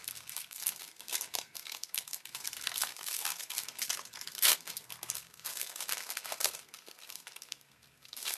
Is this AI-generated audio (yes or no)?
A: yes